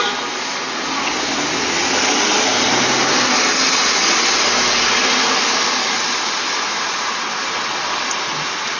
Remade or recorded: recorded